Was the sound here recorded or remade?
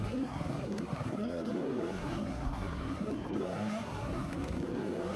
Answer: remade